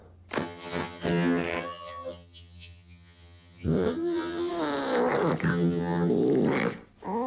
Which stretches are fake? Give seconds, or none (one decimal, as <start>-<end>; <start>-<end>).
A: 0.4-4.5; 5.5-6.1

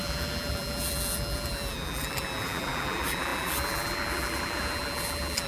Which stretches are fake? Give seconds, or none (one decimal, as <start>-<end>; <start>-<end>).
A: 0.0-5.5

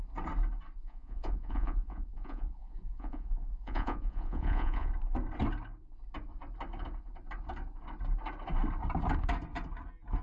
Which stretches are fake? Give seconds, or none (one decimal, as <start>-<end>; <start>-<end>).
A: 0.8-4.9